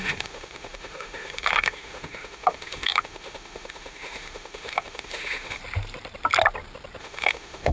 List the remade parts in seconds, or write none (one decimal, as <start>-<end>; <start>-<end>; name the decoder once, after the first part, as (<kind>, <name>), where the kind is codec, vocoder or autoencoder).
0.0-5.6 (autoencoder, DAC-VAE); 7.0-7.7